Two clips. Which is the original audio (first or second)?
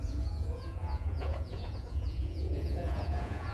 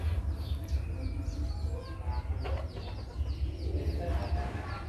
second